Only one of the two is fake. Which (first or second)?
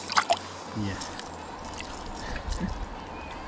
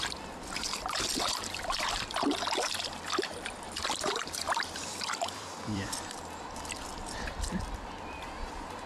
second